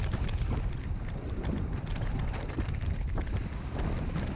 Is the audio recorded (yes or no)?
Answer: yes